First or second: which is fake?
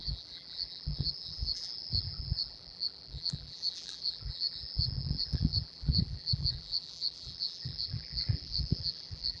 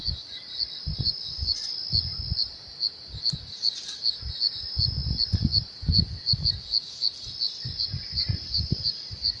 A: first